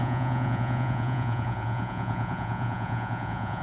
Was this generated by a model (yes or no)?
yes